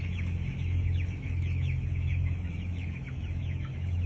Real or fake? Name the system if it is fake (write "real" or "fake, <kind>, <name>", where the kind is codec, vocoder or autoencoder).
fake, autoencoder, DAC-VAE